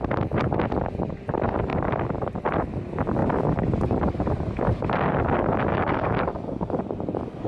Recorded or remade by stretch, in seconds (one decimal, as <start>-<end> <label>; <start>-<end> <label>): 0.0-5.7 recorded; 5.7-6.8 remade; 6.8-7.5 recorded